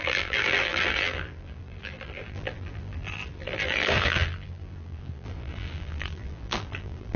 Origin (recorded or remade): remade